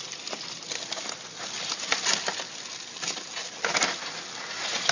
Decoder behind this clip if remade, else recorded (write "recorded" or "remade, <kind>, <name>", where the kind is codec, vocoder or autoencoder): recorded